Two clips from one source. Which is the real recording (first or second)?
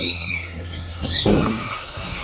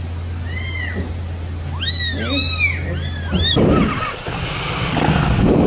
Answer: second